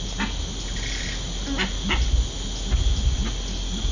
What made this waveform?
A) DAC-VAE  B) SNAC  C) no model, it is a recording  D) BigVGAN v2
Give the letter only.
C